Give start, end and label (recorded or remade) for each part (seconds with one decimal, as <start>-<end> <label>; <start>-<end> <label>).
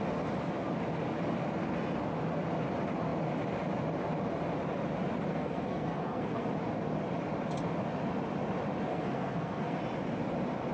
0.0-5.3 recorded; 5.3-6.5 remade; 6.5-8.9 recorded; 8.9-9.8 remade; 9.8-10.7 recorded